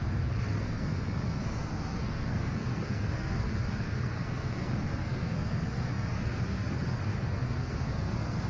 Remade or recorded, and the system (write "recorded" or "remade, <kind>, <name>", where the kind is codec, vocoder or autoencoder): remade, codec, SNAC